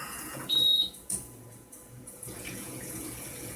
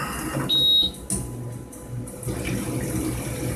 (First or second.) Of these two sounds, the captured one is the second